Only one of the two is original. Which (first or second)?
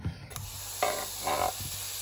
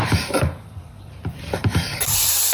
first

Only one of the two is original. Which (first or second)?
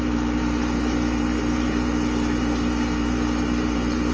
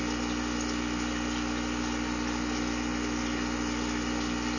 second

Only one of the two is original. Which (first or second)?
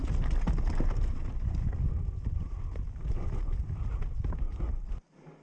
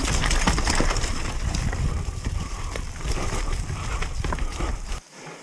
first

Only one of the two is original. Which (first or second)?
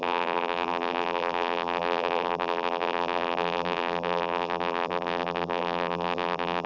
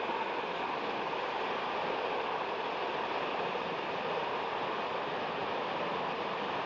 second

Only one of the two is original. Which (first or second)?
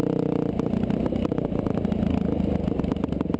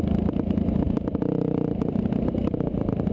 first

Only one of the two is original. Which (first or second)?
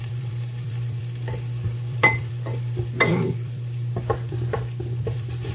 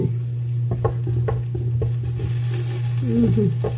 second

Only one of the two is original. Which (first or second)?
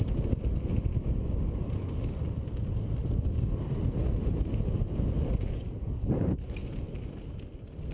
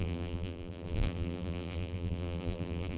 first